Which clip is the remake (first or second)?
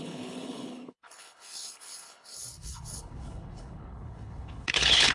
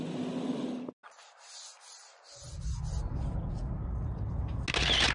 first